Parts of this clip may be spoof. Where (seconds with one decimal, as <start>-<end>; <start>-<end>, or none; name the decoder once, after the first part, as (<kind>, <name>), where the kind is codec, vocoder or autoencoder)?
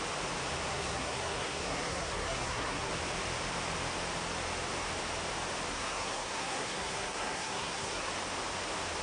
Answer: 0.7-2.9 (codec, SNAC); 5.7-8.1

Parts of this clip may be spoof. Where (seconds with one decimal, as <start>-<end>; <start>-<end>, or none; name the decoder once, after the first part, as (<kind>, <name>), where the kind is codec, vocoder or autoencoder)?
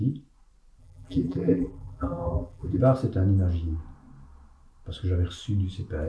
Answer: 0.8-2.8 (vocoder, BigVGAN v2)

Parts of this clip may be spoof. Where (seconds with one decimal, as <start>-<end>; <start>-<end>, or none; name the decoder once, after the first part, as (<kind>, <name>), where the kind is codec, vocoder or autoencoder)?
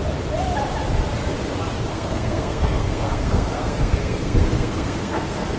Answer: 1.9-5.6 (codec, SNAC)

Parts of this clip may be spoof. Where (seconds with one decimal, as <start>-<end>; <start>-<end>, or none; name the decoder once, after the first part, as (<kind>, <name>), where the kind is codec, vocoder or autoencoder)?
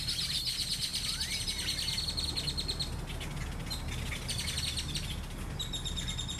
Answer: none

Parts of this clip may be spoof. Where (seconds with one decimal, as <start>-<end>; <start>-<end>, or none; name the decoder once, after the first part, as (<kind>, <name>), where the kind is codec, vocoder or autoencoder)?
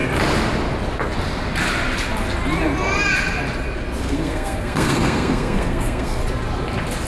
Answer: 4.0-6.2 (codec, SNAC)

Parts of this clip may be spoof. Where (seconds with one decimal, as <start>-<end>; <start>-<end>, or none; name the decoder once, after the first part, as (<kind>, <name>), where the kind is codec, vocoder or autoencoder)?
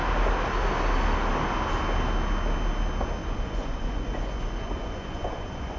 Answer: 3.2-5.8 (vocoder, Vocos)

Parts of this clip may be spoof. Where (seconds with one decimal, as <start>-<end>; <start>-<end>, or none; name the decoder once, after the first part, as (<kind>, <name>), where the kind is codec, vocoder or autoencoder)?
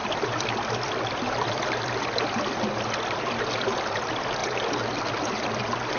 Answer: none